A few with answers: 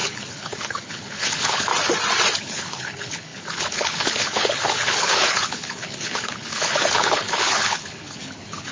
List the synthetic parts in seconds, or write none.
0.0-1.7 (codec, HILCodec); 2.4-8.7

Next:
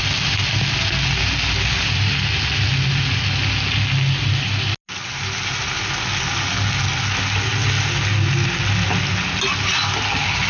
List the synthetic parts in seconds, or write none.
none

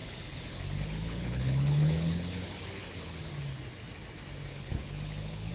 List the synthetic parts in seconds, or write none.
0.0-3.3 (codec, HILCodec); 4.5-5.5

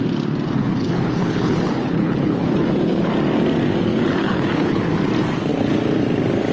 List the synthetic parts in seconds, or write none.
0.6-3.1 (codec, HILCodec); 3.9-4.8

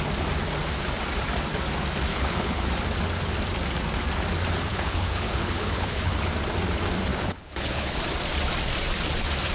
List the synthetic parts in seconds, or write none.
2.1-2.7 (codec, HILCodec); 4.7-6.3; 7.1-8.0

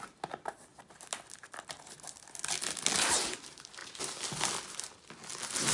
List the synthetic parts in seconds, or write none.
none

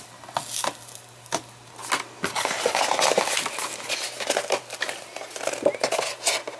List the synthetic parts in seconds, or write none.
none

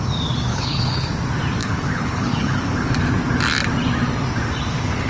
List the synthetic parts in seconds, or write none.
0.5-1.1 (codec, HILCodec); 1.6-2.9